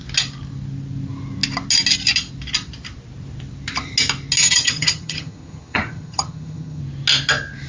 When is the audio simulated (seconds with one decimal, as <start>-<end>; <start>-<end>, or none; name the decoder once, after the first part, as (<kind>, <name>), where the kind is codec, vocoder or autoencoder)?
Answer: 4.4-6.8 (vocoder, HiFi-GAN)